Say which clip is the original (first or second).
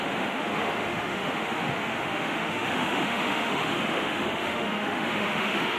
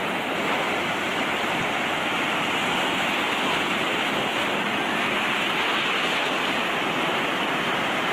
second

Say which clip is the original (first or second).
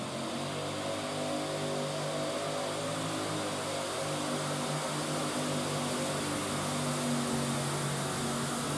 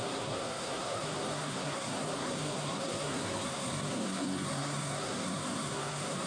first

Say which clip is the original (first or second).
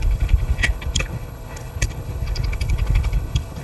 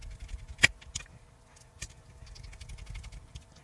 second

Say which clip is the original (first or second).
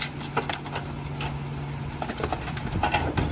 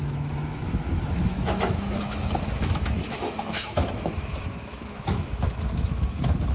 first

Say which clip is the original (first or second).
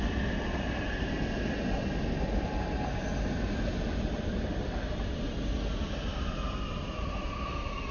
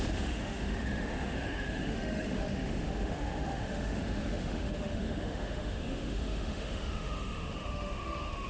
first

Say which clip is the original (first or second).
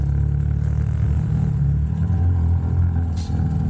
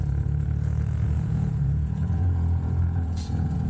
first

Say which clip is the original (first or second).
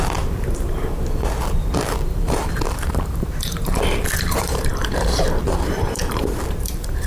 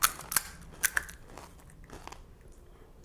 second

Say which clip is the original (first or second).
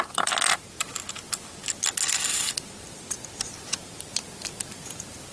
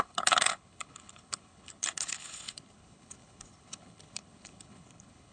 first